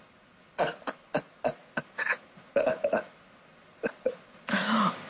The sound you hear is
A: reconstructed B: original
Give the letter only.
B